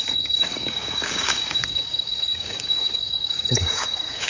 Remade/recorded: remade